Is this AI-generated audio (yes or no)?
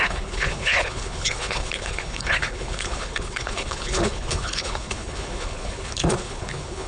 yes